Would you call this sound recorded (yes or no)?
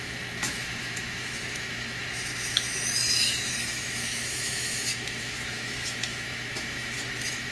no